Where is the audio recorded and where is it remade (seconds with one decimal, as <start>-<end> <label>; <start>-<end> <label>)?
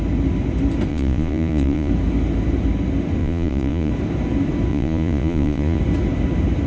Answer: 0.0-0.9 recorded; 0.9-1.9 remade; 1.9-3.2 recorded; 3.2-3.9 remade; 3.9-4.7 recorded; 4.7-5.8 remade; 5.8-6.7 recorded